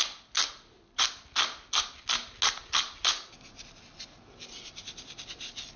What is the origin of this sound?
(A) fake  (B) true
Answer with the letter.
B